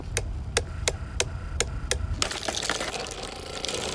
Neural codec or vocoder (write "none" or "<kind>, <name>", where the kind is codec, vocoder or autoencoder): none